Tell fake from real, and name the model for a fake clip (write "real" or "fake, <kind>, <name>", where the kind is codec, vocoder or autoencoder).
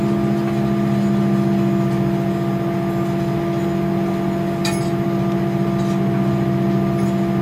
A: real